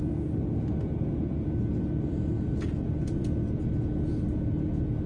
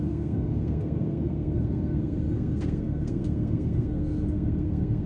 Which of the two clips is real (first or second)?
first